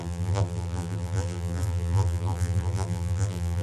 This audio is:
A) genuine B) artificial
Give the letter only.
B